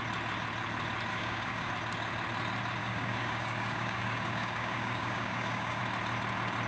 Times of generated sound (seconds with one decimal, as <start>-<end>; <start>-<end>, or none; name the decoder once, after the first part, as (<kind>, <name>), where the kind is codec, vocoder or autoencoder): 1.1-1.7 (codec, DAC); 2.8-5.8